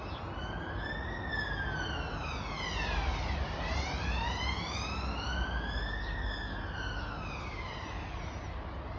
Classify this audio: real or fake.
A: real